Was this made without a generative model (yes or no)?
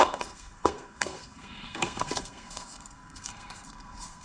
no